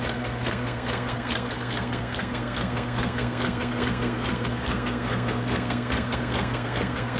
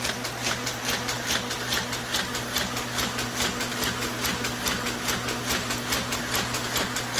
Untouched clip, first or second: second